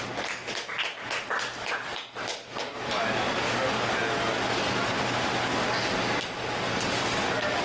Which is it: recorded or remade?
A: recorded